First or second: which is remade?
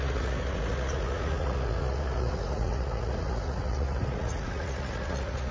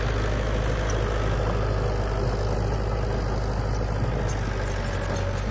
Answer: first